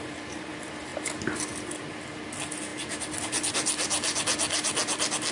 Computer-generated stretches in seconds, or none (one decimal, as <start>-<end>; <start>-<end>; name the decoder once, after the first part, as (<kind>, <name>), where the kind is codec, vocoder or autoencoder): none

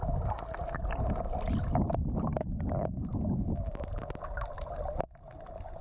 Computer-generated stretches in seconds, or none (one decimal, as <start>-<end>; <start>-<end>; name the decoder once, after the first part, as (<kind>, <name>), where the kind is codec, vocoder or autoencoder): none